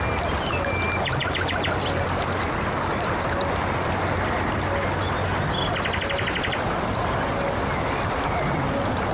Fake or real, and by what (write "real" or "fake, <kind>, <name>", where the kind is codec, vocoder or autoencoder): real